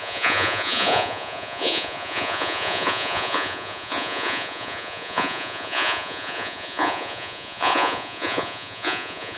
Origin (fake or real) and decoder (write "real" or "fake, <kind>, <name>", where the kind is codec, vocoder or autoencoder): fake, vocoder, Vocos